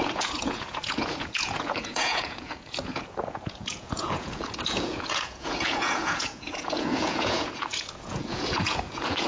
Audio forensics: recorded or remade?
remade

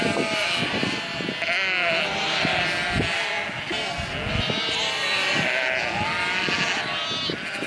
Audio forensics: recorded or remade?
recorded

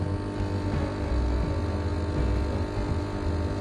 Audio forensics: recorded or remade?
recorded